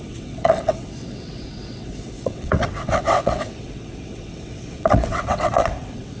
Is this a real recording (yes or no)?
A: no